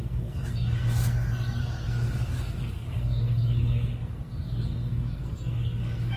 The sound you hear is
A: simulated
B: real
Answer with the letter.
A